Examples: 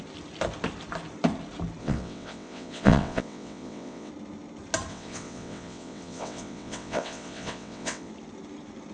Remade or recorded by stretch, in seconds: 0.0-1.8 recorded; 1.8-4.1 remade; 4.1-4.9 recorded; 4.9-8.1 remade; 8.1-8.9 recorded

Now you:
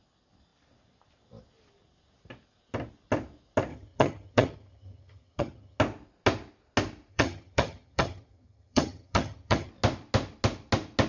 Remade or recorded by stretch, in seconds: 0.0-3.7 recorded; 3.7-5.8 remade; 5.8-7.1 recorded; 7.1-9.7 remade; 9.7-11.1 recorded